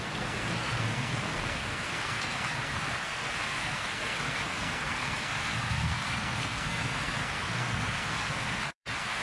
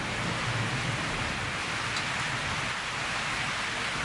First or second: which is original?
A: second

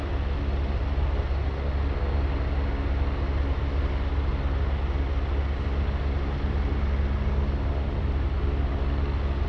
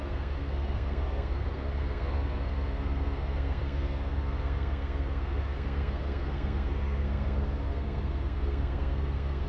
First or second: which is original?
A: first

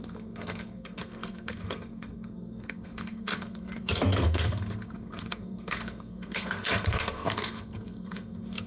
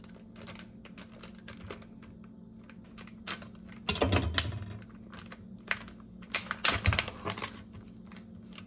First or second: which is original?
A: second